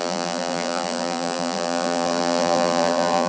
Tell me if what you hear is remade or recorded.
remade